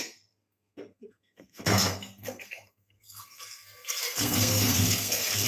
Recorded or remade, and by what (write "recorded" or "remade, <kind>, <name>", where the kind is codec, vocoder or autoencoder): remade, codec, SNAC